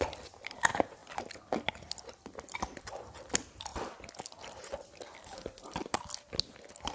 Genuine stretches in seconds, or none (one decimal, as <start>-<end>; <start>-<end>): 0.0-6.9